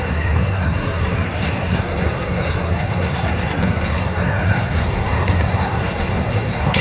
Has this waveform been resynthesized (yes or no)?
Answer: yes